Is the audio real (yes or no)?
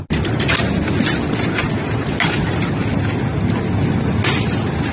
yes